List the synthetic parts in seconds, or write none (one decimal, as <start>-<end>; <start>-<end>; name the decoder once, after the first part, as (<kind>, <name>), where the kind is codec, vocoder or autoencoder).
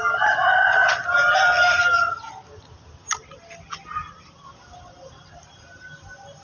none